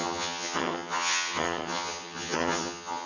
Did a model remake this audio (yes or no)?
yes